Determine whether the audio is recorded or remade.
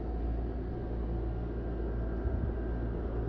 recorded